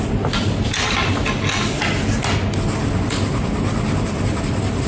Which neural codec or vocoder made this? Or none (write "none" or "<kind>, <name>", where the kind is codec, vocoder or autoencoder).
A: none